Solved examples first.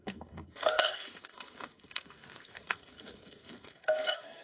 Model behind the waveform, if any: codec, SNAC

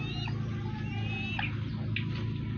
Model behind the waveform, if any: none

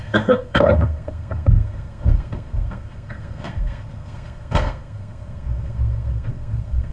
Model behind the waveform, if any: codec, SNAC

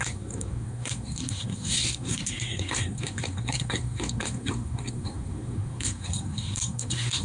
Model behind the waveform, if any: codec, SNAC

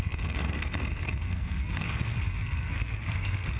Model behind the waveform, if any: codec, SNAC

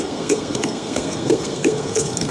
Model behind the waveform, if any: codec, SNAC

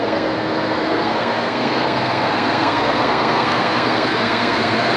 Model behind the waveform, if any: codec, SNAC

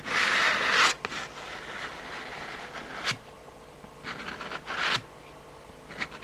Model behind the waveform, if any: none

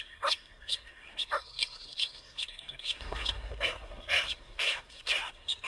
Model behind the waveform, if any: codec, SNAC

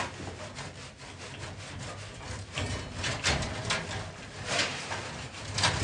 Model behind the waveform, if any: none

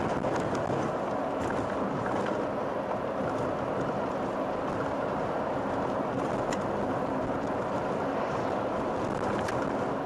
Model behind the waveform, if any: none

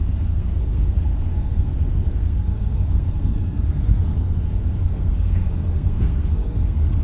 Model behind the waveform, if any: codec, SNAC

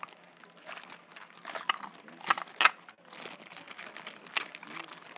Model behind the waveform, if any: none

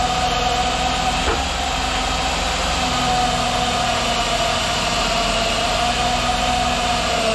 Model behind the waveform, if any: none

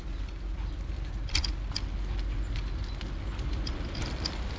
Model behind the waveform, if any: none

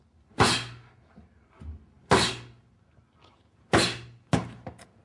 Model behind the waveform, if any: none